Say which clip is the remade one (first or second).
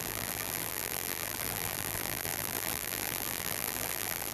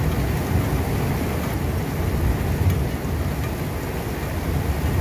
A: first